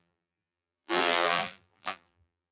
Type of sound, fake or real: fake